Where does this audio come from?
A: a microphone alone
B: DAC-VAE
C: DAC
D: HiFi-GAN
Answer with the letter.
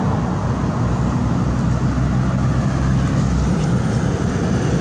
A